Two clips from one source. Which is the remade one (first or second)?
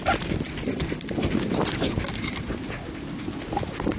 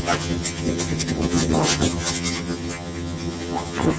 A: second